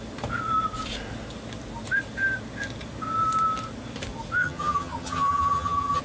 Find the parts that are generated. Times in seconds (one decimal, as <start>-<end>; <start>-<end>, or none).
4.4-6.0